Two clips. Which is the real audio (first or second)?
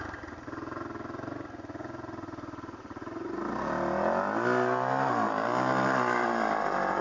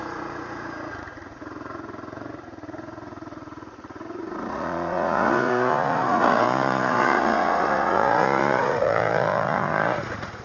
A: first